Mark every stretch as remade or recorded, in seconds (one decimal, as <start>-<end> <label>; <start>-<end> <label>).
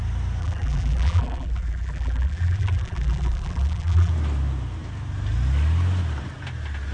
0.0-0.4 recorded; 0.4-4.1 remade; 4.1-6.9 recorded